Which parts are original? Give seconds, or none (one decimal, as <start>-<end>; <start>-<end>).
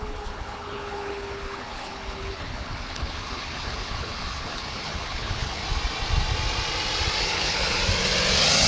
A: 5.6-7.2; 7.8-8.7